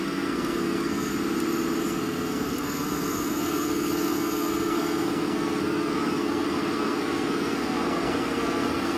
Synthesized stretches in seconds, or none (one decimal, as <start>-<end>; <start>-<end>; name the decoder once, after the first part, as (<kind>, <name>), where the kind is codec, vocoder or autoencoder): 0.0-1.1 (codec, SNAC); 1.8-9.0